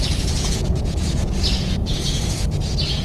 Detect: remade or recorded remade